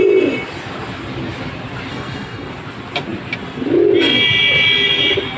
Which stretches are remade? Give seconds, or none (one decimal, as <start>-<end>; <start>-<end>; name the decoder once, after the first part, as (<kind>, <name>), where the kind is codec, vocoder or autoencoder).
1.9-2.5 (codec, SNAC)